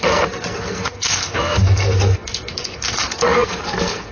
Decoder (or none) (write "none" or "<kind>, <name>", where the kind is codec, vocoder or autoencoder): codec, SNAC